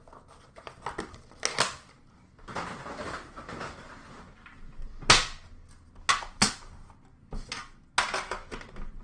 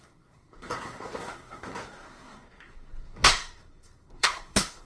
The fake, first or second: second